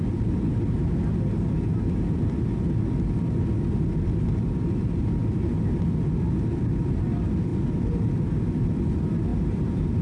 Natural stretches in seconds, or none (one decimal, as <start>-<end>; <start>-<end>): 0.0-9.3